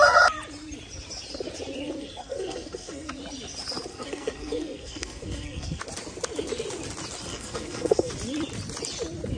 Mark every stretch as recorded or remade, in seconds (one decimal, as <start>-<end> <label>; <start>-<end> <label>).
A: 0.0-2.0 recorded; 2.0-3.1 remade; 3.1-3.9 recorded; 3.9-5.8 remade; 5.8-7.3 recorded; 7.3-8.1 remade; 8.1-9.4 recorded